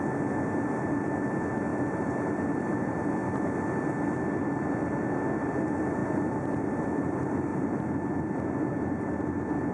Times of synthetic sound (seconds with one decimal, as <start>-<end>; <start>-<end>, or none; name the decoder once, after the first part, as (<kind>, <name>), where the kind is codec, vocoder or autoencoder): 1.7-2.9 (vocoder, BigVGAN v2); 6.0-6.7; 7.5-8.1